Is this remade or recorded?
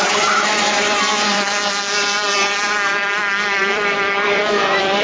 remade